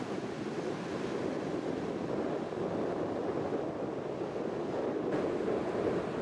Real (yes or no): yes